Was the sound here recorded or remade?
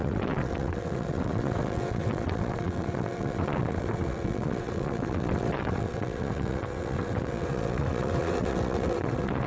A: remade